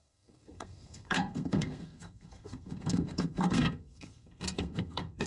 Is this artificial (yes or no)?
yes